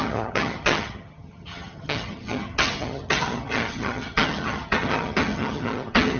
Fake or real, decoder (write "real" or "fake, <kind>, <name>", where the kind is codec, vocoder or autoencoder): fake, vocoder, HiFi-GAN